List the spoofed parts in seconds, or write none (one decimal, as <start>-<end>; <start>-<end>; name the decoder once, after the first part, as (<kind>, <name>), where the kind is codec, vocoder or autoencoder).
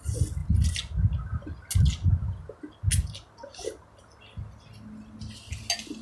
none